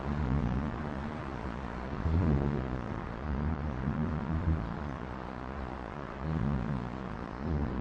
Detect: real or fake fake